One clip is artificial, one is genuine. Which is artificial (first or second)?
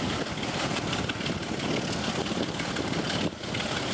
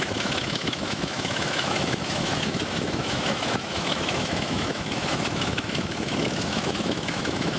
second